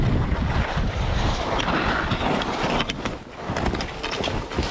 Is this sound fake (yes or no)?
no